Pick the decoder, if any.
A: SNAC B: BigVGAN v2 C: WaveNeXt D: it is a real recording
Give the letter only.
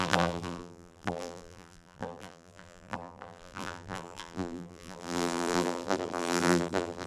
B